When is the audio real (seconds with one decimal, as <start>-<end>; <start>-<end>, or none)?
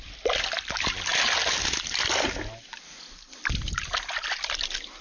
0.0-5.0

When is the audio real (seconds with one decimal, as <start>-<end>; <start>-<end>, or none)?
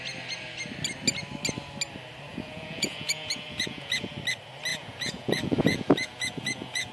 0.0-2.3; 4.1-4.7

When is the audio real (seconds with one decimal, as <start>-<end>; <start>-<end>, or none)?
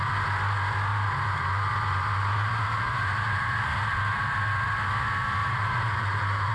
0.0-0.9; 4.4-5.4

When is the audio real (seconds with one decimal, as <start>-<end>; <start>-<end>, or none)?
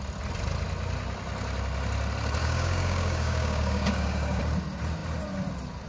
0.0-2.4; 4.4-5.9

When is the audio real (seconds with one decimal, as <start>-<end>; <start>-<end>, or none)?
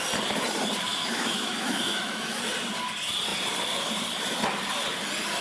0.0-0.9; 2.4-5.4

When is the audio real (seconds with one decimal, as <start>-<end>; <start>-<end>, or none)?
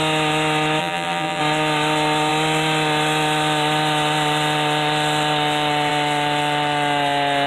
0.0-0.8; 1.4-7.5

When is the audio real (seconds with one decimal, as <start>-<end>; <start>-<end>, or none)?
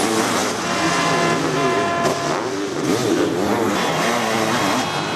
0.0-5.2